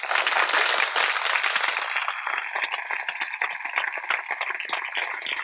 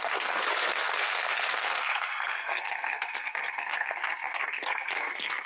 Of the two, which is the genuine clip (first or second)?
first